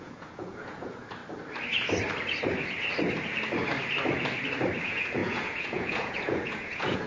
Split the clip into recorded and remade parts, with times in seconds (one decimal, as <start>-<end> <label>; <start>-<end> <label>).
0.0-1.2 remade; 1.2-4.8 recorded; 4.8-7.1 remade